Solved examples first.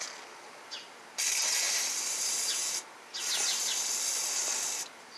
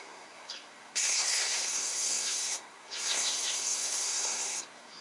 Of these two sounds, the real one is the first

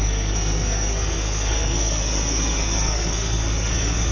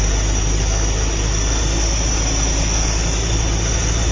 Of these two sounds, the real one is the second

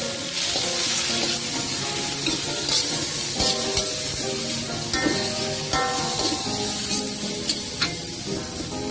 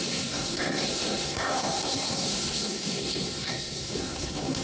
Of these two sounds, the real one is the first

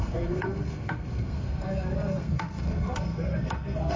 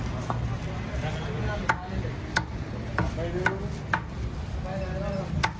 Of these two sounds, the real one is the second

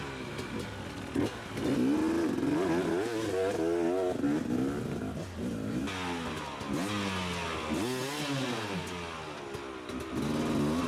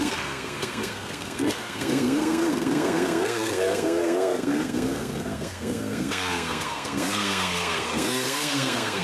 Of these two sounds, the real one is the first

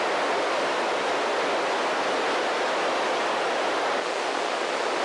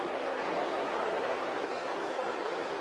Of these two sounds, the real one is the first